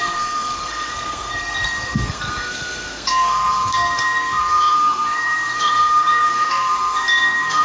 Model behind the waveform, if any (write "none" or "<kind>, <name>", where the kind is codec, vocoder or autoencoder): codec, SNAC